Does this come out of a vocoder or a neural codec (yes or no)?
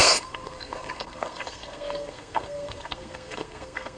yes